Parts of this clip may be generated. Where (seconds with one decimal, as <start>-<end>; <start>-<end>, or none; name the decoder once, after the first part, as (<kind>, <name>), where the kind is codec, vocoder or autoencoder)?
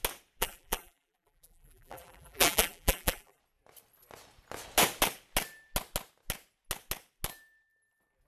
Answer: 0.4-3.4 (vocoder, BigVGAN v2)